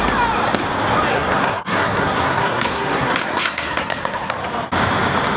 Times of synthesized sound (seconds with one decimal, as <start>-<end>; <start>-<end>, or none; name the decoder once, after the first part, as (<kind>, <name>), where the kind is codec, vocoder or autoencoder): 1.1-4.3 (codec, SNAC)